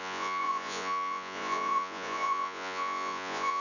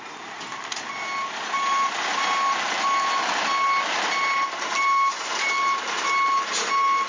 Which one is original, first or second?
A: second